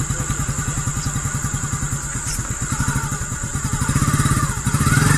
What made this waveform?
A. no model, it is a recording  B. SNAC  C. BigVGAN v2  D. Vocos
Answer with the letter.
A